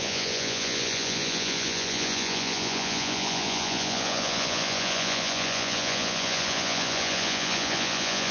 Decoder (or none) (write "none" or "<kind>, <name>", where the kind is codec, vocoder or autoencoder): vocoder, Vocos